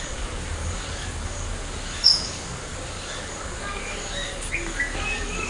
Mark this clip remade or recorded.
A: remade